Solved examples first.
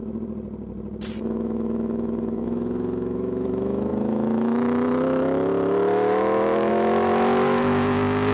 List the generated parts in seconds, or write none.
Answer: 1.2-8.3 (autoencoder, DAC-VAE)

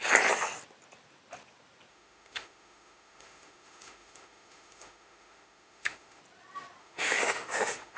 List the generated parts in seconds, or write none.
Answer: 1.9-6.2 (autoencoder, DAC-VAE); 6.8-8.0

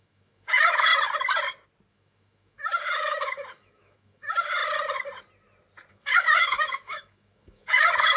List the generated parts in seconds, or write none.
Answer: 0.0-0.9 (autoencoder, DAC-VAE); 1.9-4.6; 5.9-8.2

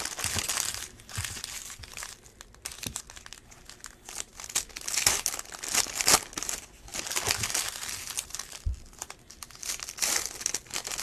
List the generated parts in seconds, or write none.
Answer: none

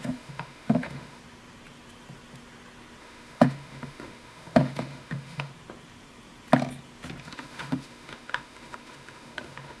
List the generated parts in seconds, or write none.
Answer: 0.0-1.2 (autoencoder, DAC-VAE); 3.0-5.5; 7.2-9.8